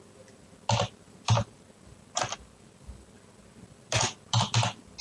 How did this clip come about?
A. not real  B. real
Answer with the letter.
B